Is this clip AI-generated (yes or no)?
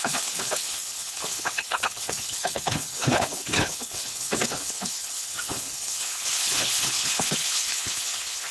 yes